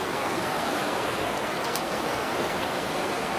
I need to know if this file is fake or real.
fake